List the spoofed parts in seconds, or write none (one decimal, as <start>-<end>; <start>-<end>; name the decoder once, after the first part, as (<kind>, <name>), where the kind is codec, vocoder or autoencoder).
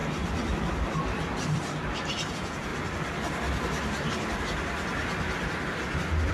2.3-2.7 (vocoder, Vocos)